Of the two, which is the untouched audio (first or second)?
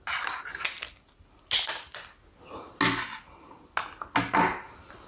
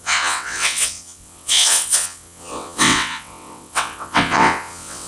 first